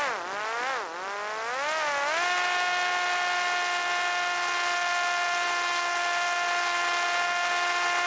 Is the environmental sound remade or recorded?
recorded